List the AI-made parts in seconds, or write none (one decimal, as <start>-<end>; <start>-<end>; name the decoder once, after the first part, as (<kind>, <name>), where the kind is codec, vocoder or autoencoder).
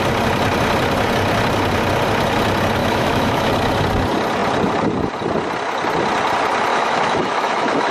2.8-3.5 (autoencoder, DAC-VAE); 6.7-7.9